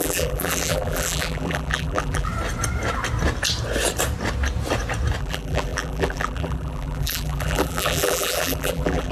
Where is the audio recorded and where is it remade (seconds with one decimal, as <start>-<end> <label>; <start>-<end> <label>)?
0.0-2.3 remade; 2.3-5.2 recorded; 5.2-9.1 remade